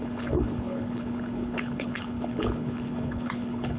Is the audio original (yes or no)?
no